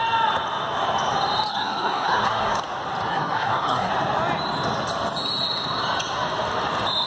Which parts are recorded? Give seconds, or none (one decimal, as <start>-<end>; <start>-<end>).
0.0-1.5; 2.6-3.1; 3.9-7.1